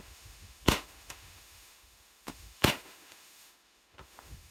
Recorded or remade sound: remade